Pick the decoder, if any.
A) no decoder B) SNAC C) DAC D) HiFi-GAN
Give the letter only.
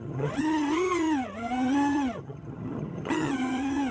D